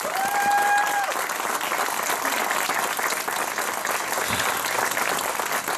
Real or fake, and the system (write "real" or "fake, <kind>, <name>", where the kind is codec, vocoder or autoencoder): real